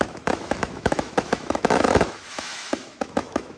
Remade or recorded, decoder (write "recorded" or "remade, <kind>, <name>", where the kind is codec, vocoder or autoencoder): remade, autoencoder, DAC-VAE